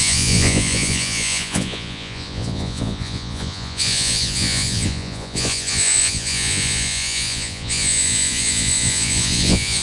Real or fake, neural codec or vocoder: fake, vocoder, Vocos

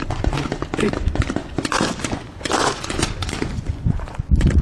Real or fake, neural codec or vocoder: fake, vocoder, Vocos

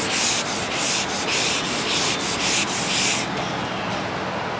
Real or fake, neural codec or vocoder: real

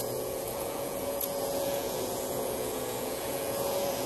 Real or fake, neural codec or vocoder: fake, vocoder, Vocos